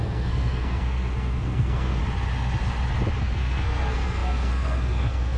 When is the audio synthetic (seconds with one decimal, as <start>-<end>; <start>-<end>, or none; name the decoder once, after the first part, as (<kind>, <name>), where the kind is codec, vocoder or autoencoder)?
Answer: 0.0-2.0 (codec, SNAC); 3.2-5.4